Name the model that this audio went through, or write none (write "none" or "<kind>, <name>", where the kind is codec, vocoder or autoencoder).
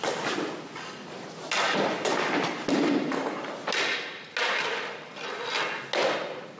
none